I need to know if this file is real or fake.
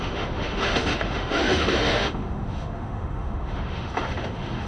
fake